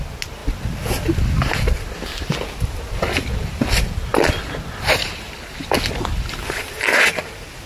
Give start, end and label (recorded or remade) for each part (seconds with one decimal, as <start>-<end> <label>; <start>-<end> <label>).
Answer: 0.0-6.4 recorded; 6.4-7.3 remade; 7.3-7.7 recorded